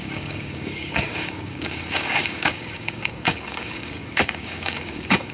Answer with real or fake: fake